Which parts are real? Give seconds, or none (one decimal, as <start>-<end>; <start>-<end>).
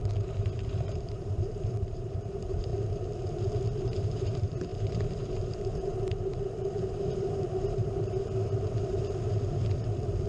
2.7-3.8